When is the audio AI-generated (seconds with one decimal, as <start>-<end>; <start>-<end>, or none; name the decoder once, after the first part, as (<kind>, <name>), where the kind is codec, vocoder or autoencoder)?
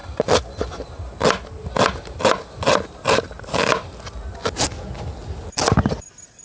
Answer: none